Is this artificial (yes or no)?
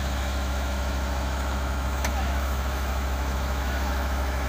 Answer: yes